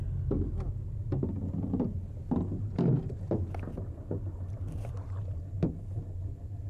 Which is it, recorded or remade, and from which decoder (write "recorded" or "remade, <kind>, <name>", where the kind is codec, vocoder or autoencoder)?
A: recorded